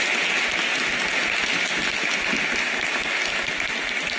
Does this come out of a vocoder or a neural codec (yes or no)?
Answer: no